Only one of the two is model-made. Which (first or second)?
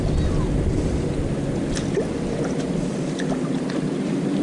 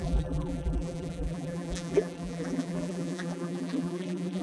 second